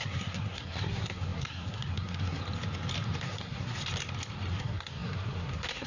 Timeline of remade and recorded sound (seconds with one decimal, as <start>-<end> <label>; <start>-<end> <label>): 0.0-2.4 remade; 2.4-3.2 recorded; 3.2-3.8 remade; 3.8-4.5 recorded; 4.5-5.9 remade